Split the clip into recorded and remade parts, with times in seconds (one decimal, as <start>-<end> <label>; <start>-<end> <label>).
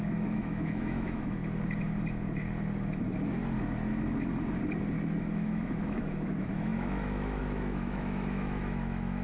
0.0-1.4 remade; 1.4-5.2 recorded; 5.2-9.2 remade